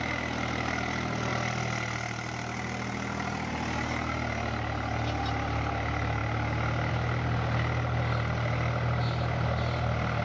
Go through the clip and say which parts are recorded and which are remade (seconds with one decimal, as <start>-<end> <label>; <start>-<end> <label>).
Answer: 0.0-10.2 recorded